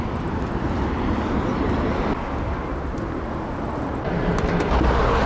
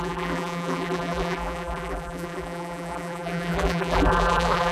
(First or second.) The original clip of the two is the first